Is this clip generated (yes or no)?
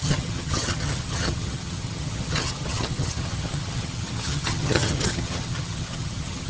yes